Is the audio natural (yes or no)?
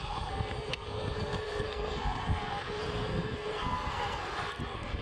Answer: no